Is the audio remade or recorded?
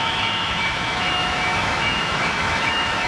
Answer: remade